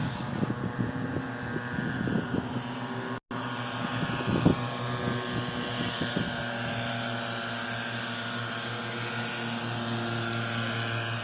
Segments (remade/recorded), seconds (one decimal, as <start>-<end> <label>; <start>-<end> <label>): 0.0-0.5 remade; 0.5-11.2 recorded